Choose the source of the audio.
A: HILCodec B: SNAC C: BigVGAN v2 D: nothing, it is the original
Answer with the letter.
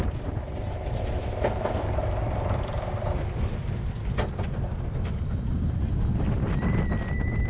C